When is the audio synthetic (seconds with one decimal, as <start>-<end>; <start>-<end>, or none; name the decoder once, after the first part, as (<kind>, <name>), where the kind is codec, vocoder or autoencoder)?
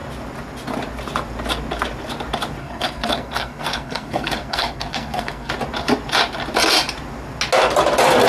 2.6-5.5 (codec, SNAC)